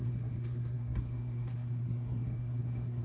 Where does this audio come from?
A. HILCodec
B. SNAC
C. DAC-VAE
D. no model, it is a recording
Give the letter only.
B